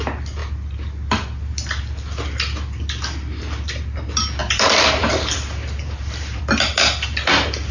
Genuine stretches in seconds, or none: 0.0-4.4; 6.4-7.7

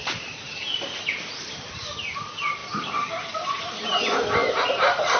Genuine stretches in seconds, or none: 0.0-0.6; 1.8-4.4

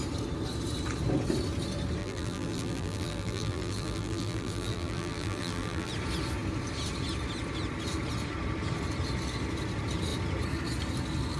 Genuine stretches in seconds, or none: 0.0-2.0; 5.9-11.4

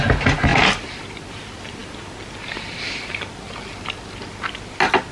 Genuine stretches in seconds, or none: 0.0-5.1

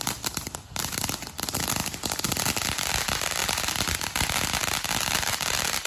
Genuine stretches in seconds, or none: 0.0-5.9

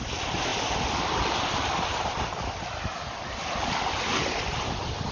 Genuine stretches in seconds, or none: 0.0-5.1